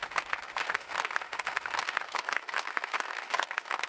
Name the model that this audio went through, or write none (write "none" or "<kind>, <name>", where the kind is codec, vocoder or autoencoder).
autoencoder, DAC-VAE